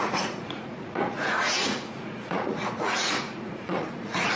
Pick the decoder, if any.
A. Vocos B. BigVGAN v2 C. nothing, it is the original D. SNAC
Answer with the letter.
A